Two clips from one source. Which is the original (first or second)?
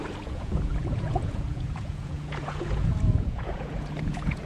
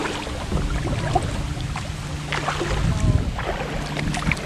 second